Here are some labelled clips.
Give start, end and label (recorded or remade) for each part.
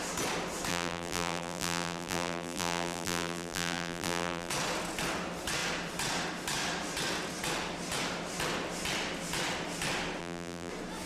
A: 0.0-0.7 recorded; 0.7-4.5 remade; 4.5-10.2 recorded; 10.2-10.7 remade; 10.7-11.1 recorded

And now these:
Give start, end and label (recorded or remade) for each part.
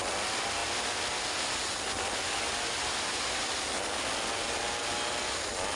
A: 0.0-5.8 recorded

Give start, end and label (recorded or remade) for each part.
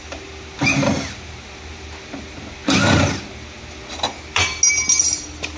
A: 0.0-5.6 recorded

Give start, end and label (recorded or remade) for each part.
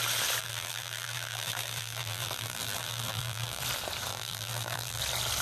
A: 0.0-0.4 recorded; 0.4-3.6 remade; 3.6-4.1 recorded; 4.1-5.0 remade; 5.0-5.4 recorded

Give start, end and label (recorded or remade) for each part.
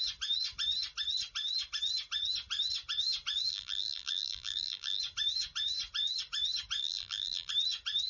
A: 0.0-3.5 recorded; 3.5-5.0 remade; 5.0-6.8 recorded; 6.8-7.5 remade; 7.5-8.1 recorded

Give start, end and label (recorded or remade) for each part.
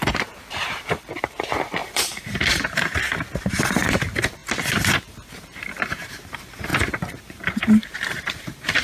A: 0.0-4.4 remade; 4.4-4.9 recorded; 4.9-6.7 remade; 6.7-7.2 recorded; 7.2-8.8 remade